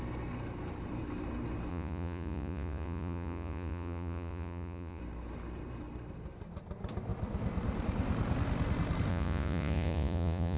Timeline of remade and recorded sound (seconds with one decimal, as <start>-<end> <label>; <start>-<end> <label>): 0.0-1.7 recorded; 1.7-5.0 remade; 5.0-9.1 recorded; 9.1-10.6 remade